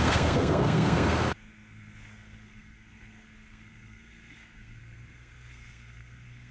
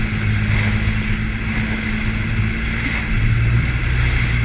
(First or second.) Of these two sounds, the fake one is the first